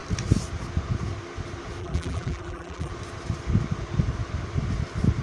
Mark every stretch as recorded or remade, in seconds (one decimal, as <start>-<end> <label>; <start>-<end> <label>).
0.0-1.8 recorded; 1.8-2.9 remade; 2.9-5.2 recorded